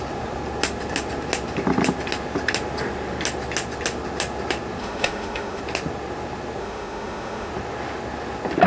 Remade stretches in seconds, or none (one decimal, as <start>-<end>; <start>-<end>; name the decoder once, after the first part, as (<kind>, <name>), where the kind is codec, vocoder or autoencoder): 4.8-5.6 (autoencoder, DAC-VAE); 6.6-7.5

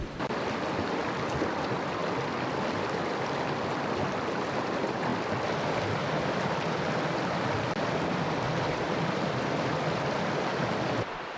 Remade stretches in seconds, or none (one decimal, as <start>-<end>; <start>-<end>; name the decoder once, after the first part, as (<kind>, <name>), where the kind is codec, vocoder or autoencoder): none

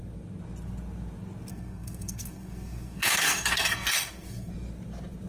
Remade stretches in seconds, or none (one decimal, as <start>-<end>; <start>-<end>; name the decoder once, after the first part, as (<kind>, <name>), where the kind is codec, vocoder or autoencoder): 1.5-4.5 (codec, SNAC)

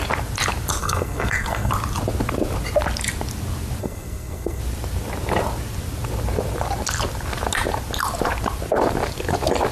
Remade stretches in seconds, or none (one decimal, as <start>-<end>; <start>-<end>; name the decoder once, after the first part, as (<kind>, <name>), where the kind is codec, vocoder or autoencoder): 0.8-1.7 (codec, SNAC); 3.8-4.6

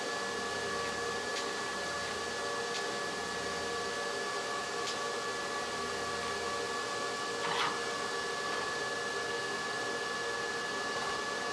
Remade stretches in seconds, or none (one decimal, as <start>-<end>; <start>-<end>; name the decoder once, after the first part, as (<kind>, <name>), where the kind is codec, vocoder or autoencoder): 1.3-2.2 (vocoder, BigVGAN v2)